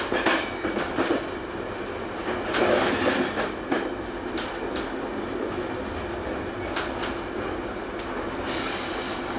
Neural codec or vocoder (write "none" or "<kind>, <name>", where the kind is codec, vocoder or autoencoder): none